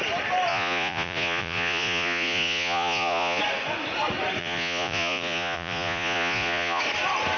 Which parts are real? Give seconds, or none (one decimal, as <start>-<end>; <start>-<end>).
0.0-0.5; 3.4-4.4; 6.8-7.4